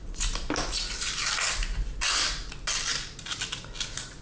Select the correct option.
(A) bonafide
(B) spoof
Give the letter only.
A